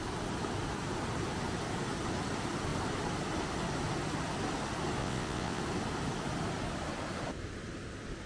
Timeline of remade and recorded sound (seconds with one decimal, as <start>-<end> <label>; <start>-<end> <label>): 0.0-5.0 recorded; 5.0-5.6 remade; 5.6-8.3 recorded